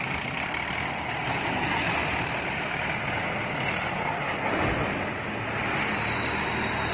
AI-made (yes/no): no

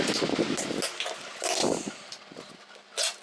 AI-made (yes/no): no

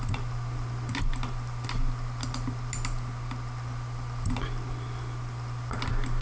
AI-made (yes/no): no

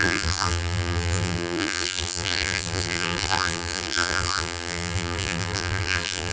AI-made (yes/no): yes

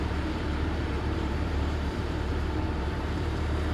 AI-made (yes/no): yes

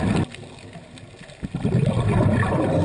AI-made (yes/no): no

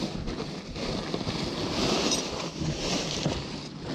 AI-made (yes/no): no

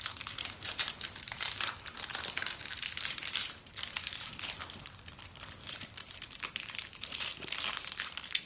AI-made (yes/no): yes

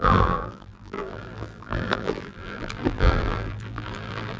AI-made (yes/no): yes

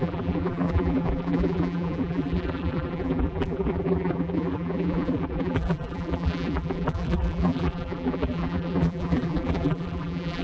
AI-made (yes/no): yes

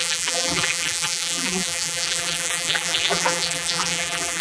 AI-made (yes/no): yes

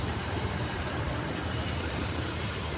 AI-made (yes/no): yes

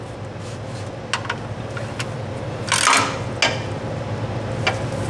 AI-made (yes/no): no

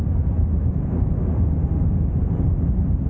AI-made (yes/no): no